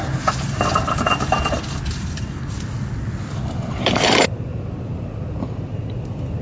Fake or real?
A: real